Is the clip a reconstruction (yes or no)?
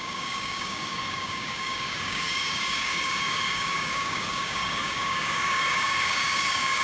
yes